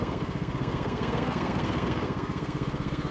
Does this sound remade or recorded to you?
remade